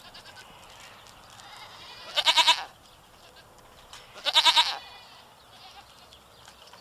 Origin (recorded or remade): recorded